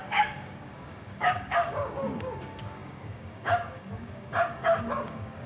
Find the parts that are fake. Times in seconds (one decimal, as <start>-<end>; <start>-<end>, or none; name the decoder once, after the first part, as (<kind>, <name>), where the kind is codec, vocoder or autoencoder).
0.0-5.5 (codec, DAC)